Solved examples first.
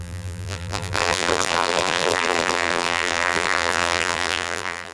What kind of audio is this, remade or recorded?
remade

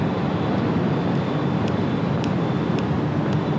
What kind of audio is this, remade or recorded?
recorded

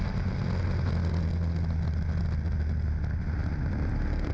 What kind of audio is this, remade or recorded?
recorded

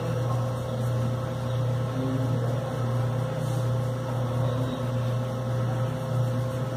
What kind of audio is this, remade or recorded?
recorded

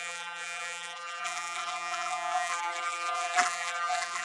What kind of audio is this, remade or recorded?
remade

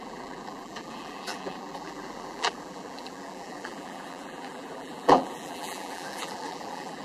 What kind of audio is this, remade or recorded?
remade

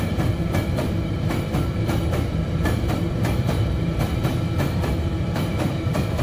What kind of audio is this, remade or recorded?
remade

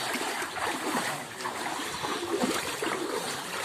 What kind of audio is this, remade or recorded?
remade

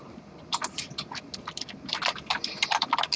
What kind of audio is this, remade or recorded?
recorded